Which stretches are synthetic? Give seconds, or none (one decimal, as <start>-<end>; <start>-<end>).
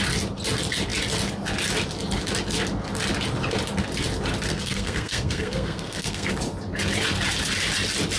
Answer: 4.5-6.3